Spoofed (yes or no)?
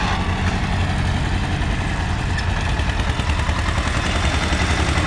no